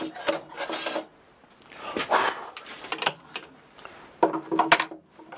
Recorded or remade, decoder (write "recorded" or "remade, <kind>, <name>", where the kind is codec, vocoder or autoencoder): recorded